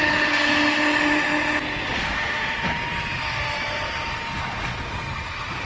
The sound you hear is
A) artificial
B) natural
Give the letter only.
B